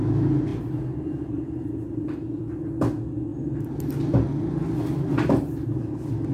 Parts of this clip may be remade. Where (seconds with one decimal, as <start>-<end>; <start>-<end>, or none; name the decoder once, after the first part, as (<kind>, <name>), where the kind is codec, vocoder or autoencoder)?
0.5-2.8 (vocoder, BigVGAN v2)